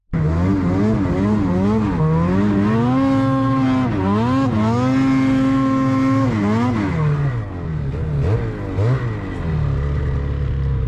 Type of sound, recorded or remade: recorded